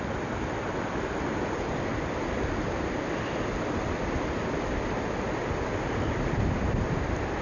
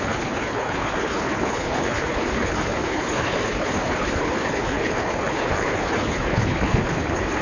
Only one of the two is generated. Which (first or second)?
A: second